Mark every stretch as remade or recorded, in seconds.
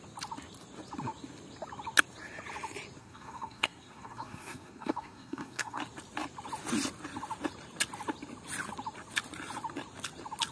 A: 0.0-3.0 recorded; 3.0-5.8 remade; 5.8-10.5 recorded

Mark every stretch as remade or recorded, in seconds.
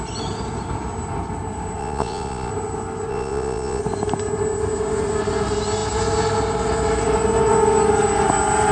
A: 0.0-1.8 recorded; 1.8-2.5 remade; 2.5-3.1 recorded; 3.1-3.8 remade; 3.8-8.7 recorded